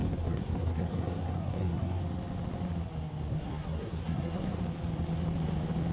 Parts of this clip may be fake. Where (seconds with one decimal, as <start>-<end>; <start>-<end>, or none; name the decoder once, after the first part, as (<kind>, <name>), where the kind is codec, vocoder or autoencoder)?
0.0-2.0 (codec, SNAC); 3.3-4.6